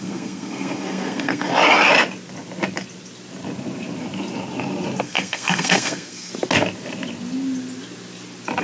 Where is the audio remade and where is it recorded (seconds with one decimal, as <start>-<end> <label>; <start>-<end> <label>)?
0.0-1.5 remade; 1.5-5.0 recorded; 5.0-6.3 remade; 6.3-8.6 recorded